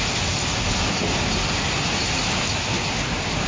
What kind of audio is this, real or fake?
real